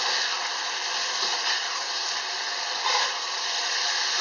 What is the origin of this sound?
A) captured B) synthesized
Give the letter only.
A